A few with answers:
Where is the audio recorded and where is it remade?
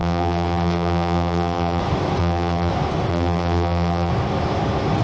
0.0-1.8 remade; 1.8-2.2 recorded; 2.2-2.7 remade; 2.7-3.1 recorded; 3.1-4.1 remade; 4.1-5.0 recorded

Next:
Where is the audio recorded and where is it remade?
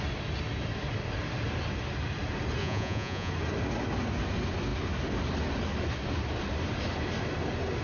0.0-2.6 recorded; 2.6-3.3 remade; 3.3-7.8 recorded